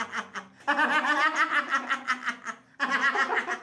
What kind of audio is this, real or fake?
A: real